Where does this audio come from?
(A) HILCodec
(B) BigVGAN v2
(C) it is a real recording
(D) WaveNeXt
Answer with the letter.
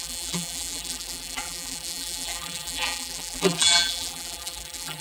B